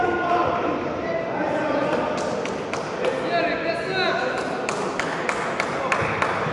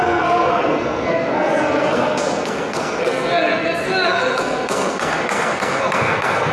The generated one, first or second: second